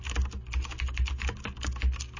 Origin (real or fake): real